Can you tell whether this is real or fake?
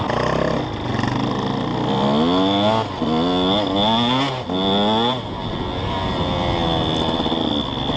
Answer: real